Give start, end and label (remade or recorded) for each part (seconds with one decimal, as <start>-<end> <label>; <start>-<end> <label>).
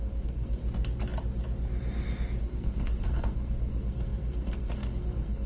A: 0.0-0.6 remade; 0.6-2.4 recorded; 2.4-5.5 remade